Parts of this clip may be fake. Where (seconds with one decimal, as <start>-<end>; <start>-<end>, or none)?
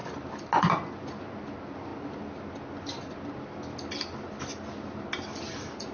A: none